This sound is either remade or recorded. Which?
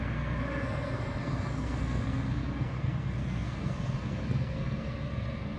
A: remade